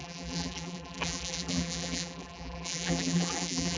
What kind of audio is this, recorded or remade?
remade